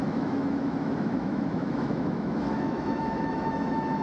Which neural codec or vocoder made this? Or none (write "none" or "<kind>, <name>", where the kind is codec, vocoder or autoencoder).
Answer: autoencoder, DAC-VAE